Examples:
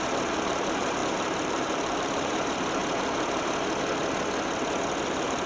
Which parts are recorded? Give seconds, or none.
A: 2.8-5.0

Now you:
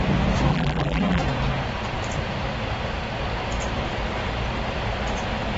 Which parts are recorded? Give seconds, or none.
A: 0.0-0.5; 1.2-5.6

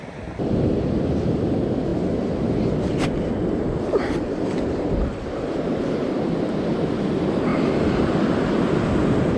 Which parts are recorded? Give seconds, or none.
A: 1.9-5.9; 7.5-9.0

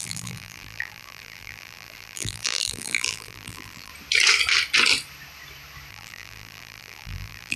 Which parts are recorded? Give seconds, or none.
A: 3.9-5.9

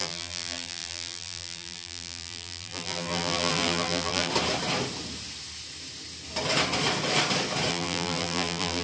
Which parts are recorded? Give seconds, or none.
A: 4.3-7.7

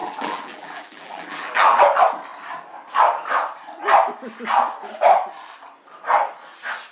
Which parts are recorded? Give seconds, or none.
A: 1.8-6.9